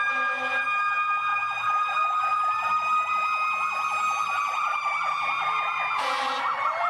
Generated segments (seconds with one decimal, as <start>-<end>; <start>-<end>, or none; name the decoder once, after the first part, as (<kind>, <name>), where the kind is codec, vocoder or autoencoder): 1.3-1.9 (vocoder, BigVGAN v2); 2.3-3.1; 6.0-6.9